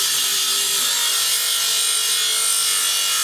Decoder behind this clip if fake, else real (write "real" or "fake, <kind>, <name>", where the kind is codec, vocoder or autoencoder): real